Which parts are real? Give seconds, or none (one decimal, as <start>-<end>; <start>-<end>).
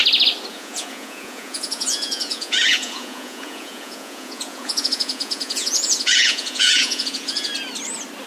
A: 0.0-0.5; 7.5-8.3